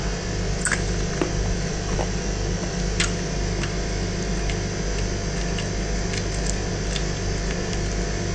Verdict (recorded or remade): recorded